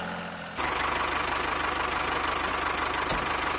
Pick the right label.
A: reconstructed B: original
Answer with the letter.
B